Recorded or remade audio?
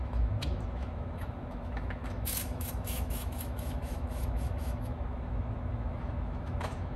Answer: remade